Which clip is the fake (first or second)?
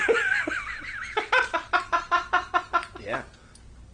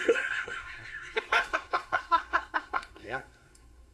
second